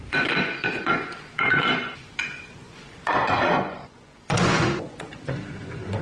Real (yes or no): no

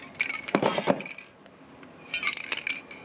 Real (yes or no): yes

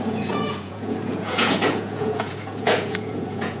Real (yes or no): no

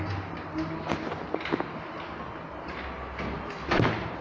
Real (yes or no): yes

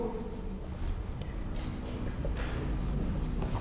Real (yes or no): yes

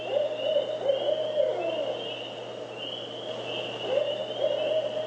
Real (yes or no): yes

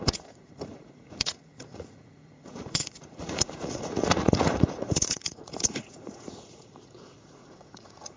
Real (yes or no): no